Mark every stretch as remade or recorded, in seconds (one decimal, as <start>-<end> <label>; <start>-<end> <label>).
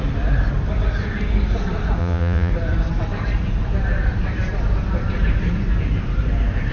0.0-2.0 recorded; 2.0-2.5 remade; 2.5-6.7 recorded